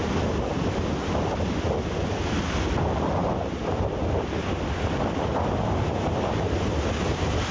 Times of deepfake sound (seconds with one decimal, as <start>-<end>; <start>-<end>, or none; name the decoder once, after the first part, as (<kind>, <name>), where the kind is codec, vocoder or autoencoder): none